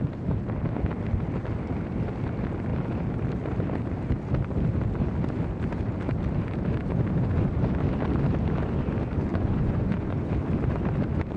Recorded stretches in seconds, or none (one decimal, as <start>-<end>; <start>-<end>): 0.0-9.3; 10.3-11.4